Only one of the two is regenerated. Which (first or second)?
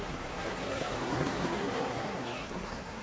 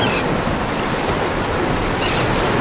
first